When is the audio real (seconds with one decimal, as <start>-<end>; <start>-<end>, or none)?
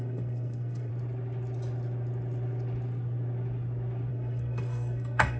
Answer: 0.9-4.1